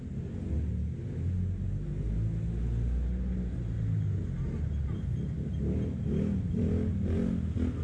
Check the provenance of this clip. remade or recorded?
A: recorded